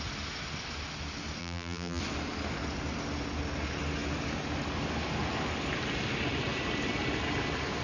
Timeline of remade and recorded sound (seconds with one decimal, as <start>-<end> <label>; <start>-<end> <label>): 0.0-1.4 recorded; 1.4-2.0 remade; 2.0-7.8 recorded